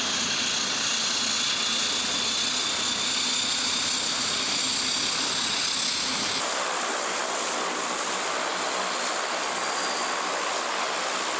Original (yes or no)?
yes